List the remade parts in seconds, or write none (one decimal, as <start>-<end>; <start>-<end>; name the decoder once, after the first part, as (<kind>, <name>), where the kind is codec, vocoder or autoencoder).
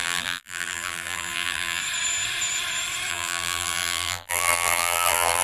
0.0-1.8 (vocoder, BigVGAN v2); 3.1-5.4